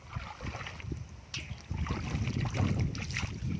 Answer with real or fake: real